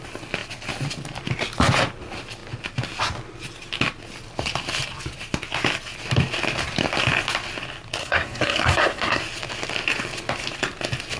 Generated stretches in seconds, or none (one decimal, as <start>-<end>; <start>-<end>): 8.0-9.2